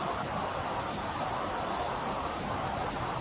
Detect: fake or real fake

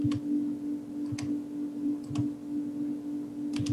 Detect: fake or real real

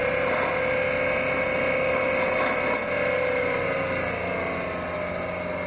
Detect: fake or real real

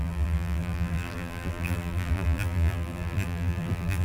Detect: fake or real fake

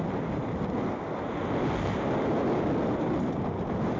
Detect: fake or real real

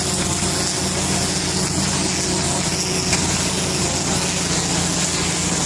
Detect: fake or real real